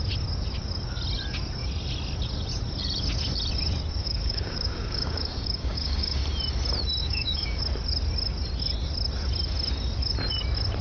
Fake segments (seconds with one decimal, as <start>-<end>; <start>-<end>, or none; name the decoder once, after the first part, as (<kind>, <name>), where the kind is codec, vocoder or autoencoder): 4.0-6.2 (codec, DAC); 7.0-7.6